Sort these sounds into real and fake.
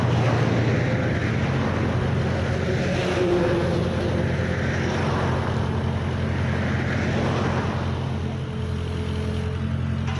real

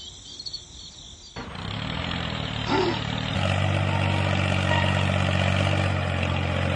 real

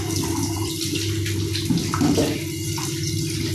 real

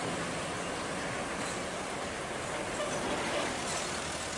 real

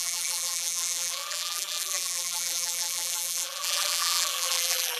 fake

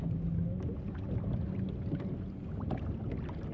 real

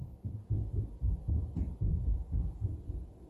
real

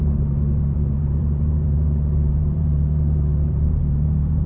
fake